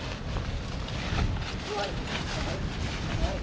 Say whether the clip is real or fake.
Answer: real